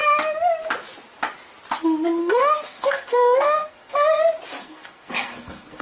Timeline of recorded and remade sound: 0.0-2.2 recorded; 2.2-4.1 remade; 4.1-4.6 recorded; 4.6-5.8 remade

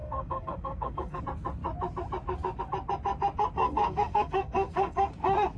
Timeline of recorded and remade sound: 0.0-1.2 remade; 1.2-3.6 recorded; 3.6-5.1 remade; 5.1-5.6 recorded

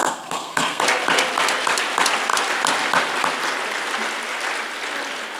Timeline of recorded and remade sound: 0.0-0.8 remade; 0.8-5.4 recorded

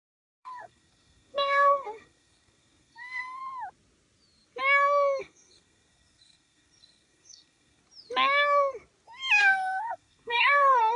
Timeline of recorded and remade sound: 0.0-3.4 remade; 3.4-5.2 recorded; 5.2-7.8 remade; 7.8-9.4 recorded; 9.4-11.0 remade

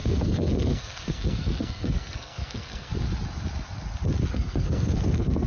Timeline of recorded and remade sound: 0.0-2.9 remade; 2.9-4.3 recorded; 4.3-5.5 remade

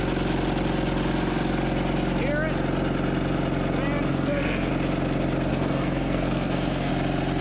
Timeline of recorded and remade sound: 0.0-4.1 recorded; 4.1-4.7 remade; 4.7-5.5 recorded; 5.5-6.9 remade; 6.9-7.4 recorded